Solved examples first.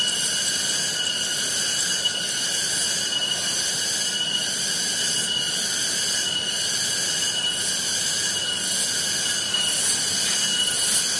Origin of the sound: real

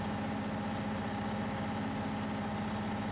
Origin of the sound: real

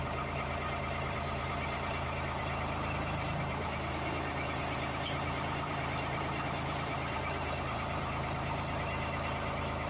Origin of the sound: fake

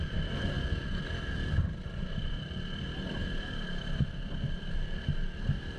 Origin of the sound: fake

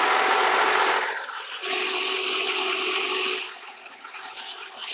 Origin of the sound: real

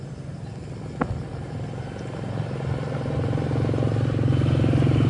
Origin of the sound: real